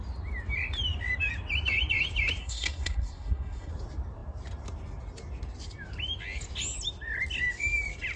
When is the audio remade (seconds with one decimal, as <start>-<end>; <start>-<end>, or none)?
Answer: 2.4-3.7